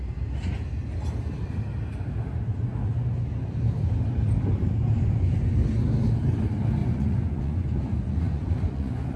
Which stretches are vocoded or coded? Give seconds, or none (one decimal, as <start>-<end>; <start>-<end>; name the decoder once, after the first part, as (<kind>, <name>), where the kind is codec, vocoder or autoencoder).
6.8-9.2 (vocoder, Vocos)